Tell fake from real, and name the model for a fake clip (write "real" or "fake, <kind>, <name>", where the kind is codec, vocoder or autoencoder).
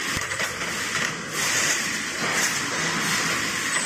real